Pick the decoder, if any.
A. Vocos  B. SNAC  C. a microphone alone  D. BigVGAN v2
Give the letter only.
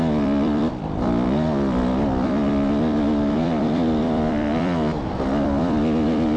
D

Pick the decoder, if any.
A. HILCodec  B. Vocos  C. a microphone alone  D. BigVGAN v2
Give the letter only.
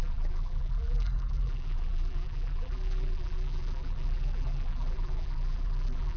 D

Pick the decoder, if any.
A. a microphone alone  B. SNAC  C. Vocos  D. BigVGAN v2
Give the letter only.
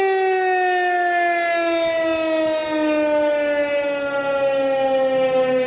A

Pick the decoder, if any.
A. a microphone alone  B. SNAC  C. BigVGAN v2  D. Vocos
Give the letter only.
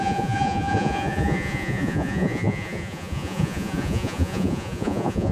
D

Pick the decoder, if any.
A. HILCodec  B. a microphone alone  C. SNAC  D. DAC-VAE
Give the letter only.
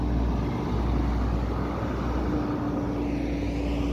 B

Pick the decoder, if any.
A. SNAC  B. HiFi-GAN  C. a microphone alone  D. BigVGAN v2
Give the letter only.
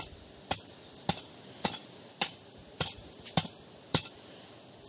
C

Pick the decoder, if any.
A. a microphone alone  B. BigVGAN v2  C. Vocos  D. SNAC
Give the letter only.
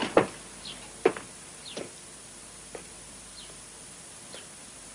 A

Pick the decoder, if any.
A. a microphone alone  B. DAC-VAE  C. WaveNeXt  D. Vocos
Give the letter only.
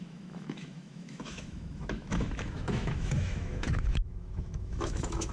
B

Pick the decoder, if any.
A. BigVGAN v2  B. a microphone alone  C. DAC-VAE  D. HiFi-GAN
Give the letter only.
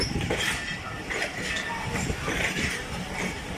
B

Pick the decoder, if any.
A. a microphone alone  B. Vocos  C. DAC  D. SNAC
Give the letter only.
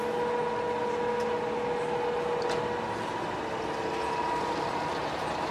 A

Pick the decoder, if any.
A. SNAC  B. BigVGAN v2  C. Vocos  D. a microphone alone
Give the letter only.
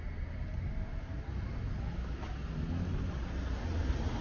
D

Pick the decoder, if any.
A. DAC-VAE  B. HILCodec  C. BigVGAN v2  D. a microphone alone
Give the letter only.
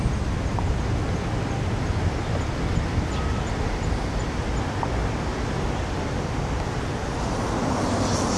D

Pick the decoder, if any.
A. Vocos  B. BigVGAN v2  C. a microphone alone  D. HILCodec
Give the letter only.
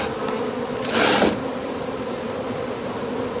C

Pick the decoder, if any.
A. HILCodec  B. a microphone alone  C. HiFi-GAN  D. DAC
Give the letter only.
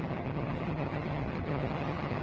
C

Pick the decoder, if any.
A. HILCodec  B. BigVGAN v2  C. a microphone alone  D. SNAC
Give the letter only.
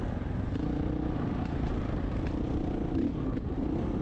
C